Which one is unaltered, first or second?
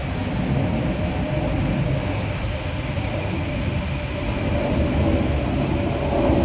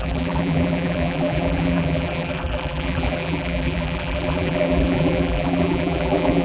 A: first